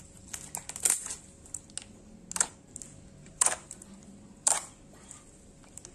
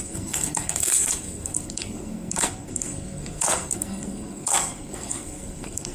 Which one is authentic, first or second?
first